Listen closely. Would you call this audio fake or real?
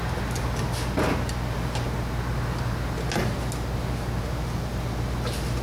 real